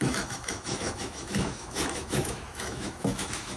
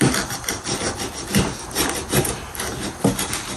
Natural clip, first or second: second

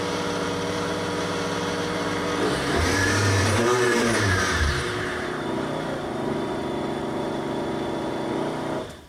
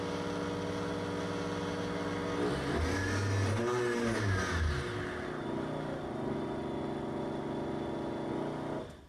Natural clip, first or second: second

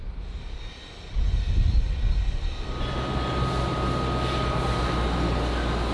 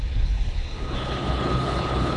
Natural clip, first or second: first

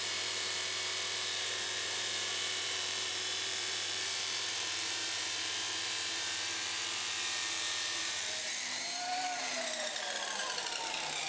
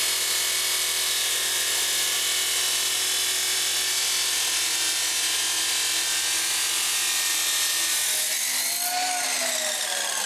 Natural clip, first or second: second